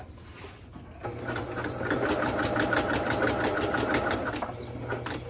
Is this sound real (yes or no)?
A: yes